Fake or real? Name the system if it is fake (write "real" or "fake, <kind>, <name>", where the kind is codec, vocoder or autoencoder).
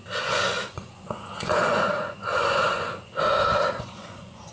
fake, vocoder, Vocos